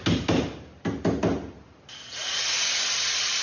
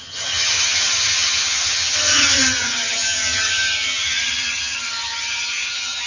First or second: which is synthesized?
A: second